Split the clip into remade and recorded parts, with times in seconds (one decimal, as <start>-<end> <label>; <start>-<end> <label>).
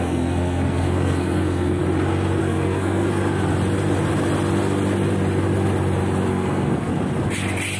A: 0.0-1.8 remade; 1.8-2.4 recorded; 2.4-3.2 remade; 3.2-6.3 recorded; 6.3-6.9 remade; 6.9-7.8 recorded